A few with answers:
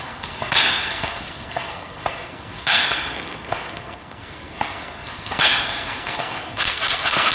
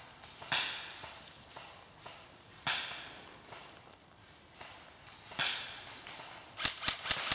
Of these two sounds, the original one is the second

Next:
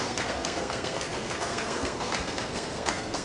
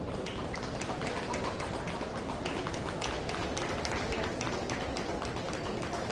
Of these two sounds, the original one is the second